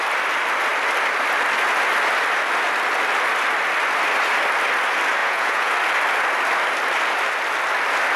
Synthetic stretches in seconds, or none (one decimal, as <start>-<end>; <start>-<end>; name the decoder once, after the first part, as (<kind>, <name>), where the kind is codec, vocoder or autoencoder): 5.2-5.7 (vocoder, Vocos)